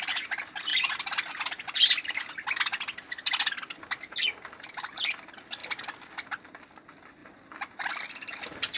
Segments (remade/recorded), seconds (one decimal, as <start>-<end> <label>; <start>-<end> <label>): 0.0-8.8 recorded